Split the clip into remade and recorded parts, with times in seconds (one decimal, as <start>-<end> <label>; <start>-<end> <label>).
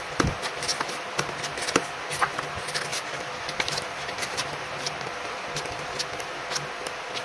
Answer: 0.0-2.9 recorded; 2.9-6.0 remade; 6.0-7.2 recorded